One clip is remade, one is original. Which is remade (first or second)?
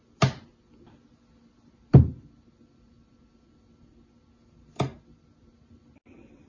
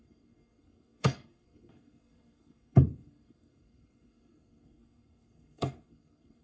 second